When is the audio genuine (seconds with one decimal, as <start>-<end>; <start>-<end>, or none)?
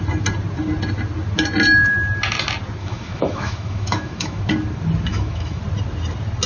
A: 0.0-2.8; 4.4-5.1; 5.6-6.5